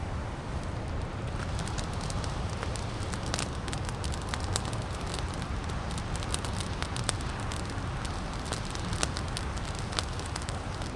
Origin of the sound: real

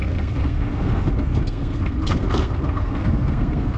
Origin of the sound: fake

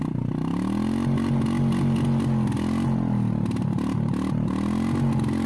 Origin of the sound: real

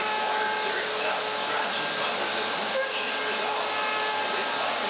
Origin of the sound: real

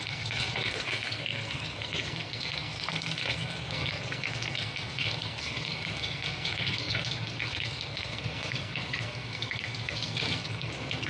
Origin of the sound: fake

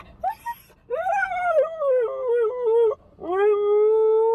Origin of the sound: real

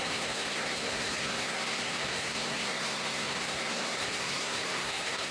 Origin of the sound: fake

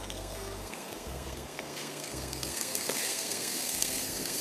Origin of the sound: fake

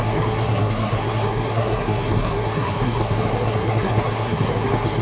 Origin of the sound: fake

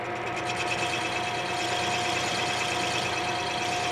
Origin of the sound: real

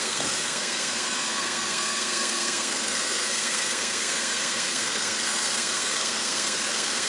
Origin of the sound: fake